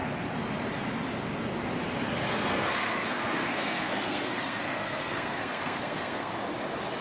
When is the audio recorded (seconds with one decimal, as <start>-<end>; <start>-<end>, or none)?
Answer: 0.0-2.1; 6.3-7.0